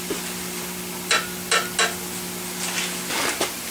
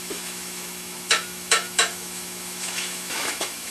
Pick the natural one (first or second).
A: first